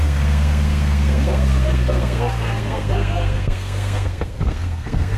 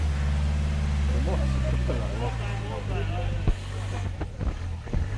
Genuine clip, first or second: second